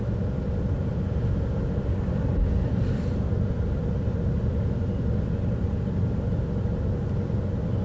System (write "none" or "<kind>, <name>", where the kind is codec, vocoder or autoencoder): none